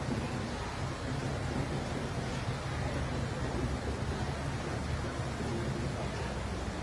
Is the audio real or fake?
real